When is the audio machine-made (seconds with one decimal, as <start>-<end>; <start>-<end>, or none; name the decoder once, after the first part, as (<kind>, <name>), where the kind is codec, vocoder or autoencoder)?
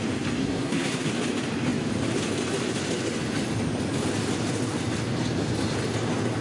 0.4-1.1 (codec, SNAC)